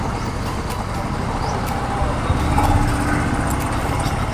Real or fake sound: real